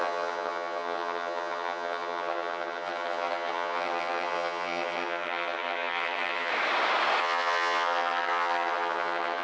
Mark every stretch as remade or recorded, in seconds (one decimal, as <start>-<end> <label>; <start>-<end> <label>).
0.0-6.5 remade; 6.5-7.2 recorded; 7.2-9.4 remade